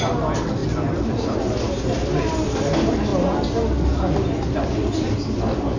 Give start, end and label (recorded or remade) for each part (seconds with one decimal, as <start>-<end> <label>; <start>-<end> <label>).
0.0-5.8 recorded